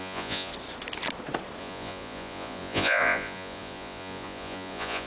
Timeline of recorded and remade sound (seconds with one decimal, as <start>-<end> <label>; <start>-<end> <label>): 0.0-0.5 remade; 0.5-1.6 recorded; 1.6-5.1 remade